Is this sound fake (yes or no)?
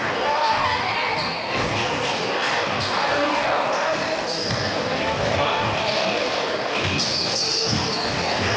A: yes